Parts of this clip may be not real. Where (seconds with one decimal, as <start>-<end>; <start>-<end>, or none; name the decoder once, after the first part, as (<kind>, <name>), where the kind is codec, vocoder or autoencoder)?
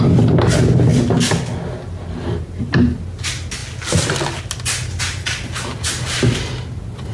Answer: none